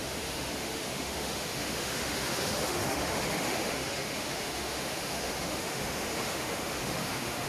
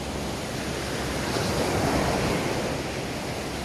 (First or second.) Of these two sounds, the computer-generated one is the first